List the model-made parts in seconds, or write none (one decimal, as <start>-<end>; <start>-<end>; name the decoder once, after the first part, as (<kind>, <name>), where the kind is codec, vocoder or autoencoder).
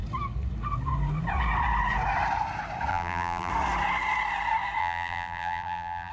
2.9-3.5 (vocoder, BigVGAN v2); 4.8-6.1